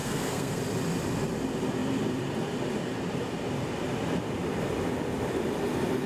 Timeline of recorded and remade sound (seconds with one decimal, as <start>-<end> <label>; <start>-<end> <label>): 0.0-0.6 remade; 0.6-6.1 recorded